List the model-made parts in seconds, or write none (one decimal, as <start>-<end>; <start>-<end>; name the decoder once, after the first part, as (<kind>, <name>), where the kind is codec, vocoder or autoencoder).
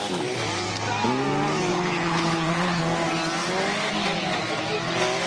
1.7-2.8 (codec, HILCodec)